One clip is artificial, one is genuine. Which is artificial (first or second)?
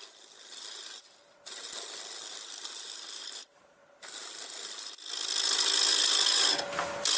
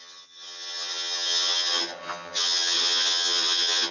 second